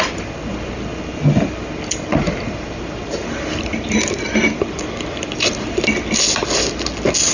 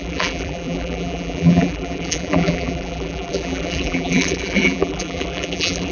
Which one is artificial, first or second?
second